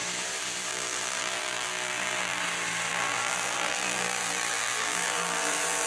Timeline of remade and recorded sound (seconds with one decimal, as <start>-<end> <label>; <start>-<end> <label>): 0.0-0.7 recorded; 0.7-2.4 remade; 2.4-2.9 recorded; 2.9-5.9 remade